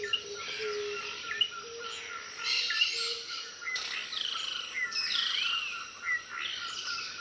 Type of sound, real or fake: real